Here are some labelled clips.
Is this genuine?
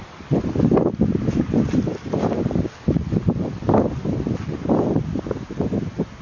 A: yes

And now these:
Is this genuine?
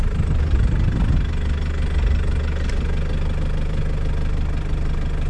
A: yes